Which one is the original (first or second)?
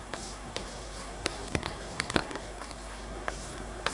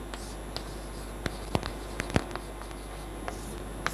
second